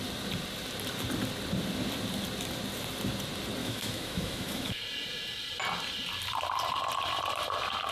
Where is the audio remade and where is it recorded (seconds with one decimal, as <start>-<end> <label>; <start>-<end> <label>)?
0.0-3.6 recorded; 3.6-4.8 remade; 4.8-7.9 recorded